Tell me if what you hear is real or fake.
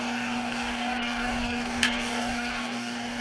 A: fake